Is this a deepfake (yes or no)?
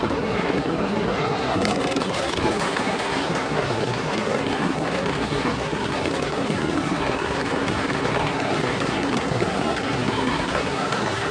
yes